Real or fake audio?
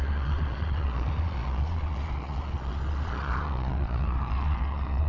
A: fake